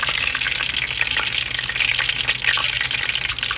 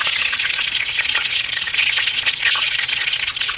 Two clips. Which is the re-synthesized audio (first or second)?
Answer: second